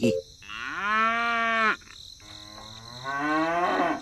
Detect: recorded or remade recorded